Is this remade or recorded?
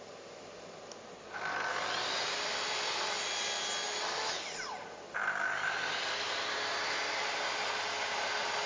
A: recorded